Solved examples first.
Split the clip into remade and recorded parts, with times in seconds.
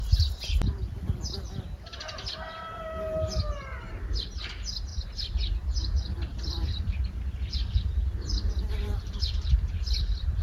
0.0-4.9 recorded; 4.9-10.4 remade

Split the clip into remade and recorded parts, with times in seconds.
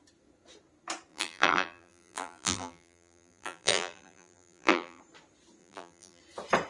0.0-1.1 recorded; 1.1-5.0 remade; 5.0-5.6 recorded; 5.6-6.2 remade; 6.2-6.7 recorded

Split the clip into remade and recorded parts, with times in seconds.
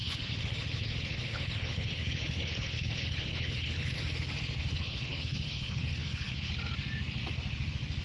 0.0-4.0 remade; 4.0-4.6 recorded; 4.6-6.5 remade; 6.5-8.0 recorded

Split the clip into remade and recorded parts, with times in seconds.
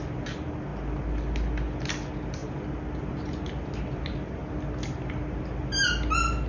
0.0-6.5 recorded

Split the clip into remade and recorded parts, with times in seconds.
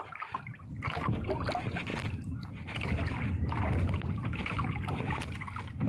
0.0-5.9 recorded